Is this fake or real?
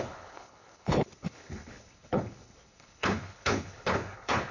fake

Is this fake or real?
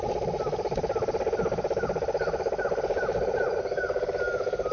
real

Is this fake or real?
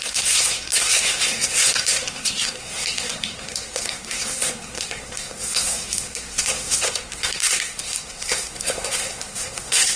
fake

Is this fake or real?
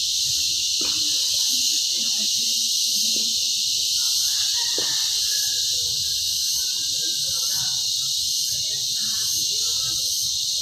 fake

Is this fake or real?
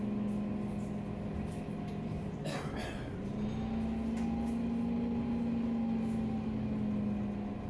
real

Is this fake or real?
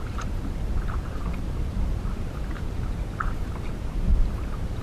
fake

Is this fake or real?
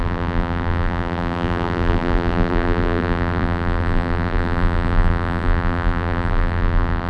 fake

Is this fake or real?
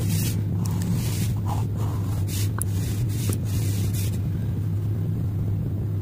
real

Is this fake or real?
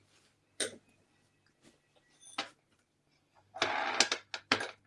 real